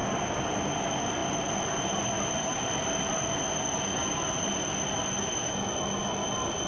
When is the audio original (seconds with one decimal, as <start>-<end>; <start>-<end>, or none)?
0.0-6.7